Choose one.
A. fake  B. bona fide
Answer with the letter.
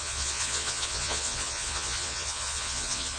A